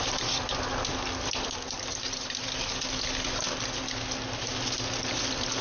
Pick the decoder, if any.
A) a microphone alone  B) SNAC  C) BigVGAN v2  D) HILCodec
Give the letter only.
A